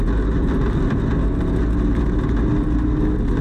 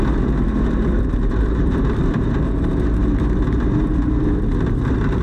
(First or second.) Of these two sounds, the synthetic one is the second